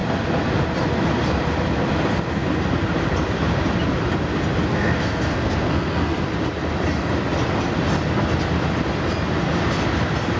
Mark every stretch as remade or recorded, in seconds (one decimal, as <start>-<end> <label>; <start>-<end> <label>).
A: 0.0-4.7 recorded; 4.7-6.2 remade; 6.2-10.4 recorded